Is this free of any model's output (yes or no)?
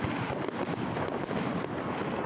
yes